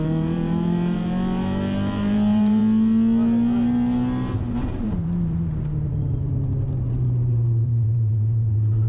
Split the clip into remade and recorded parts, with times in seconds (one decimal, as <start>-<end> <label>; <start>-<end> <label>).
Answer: 0.0-2.6 remade; 2.6-4.8 recorded; 4.8-8.9 remade